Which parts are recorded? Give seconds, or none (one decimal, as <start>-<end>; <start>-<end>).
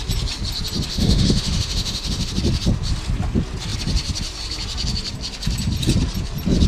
0.0-0.9; 2.3-6.7